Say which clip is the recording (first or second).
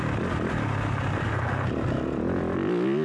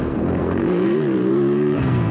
first